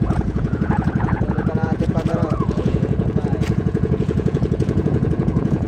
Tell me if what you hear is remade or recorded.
remade